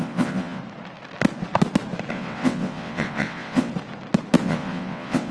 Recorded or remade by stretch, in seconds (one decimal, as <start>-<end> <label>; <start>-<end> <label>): 0.0-0.6 remade; 0.6-2.1 recorded; 2.1-3.7 remade; 3.7-4.4 recorded; 4.4-5.3 remade